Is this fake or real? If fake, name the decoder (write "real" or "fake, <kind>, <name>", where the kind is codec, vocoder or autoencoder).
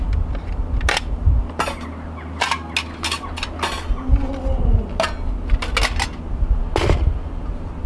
real